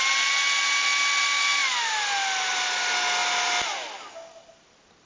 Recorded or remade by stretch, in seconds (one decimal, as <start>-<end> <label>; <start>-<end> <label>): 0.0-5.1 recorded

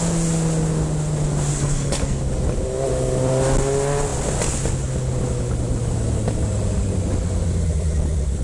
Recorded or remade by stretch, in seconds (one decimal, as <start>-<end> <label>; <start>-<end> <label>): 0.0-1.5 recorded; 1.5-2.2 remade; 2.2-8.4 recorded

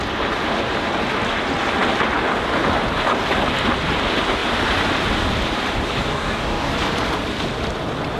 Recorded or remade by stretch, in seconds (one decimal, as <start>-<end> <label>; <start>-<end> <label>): 0.0-6.1 recorded; 6.1-6.7 remade; 6.7-8.2 recorded

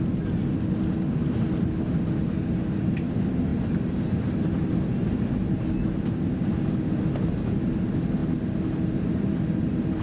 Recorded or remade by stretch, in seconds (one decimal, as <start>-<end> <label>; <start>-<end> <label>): 0.0-10.0 recorded